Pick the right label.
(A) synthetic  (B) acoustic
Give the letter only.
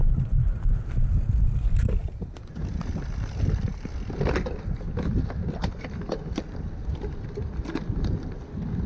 B